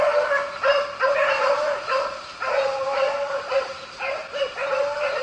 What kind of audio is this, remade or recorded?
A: recorded